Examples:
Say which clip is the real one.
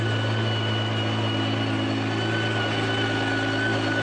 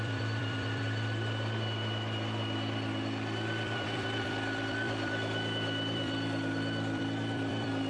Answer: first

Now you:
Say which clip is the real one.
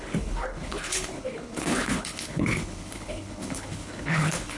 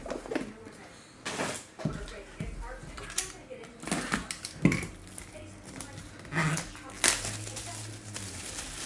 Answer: second